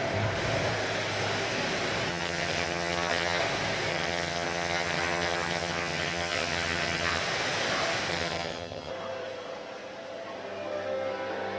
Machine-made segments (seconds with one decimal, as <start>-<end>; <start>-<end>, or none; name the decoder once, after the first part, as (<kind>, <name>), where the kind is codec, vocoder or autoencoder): 2.1-3.4 (vocoder, HiFi-GAN); 3.9-7.2; 8.1-8.9